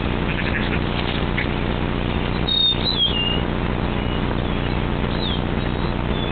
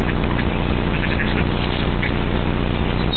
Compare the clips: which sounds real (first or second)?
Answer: first